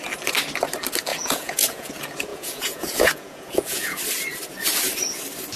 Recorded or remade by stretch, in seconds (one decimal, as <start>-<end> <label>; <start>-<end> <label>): 0.0-1.1 recorded; 1.1-1.9 remade; 1.9-2.3 recorded; 2.3-4.0 remade; 4.0-5.6 recorded

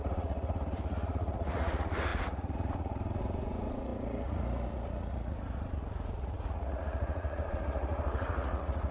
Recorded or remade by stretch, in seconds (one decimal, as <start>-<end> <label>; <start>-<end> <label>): 0.0-8.9 remade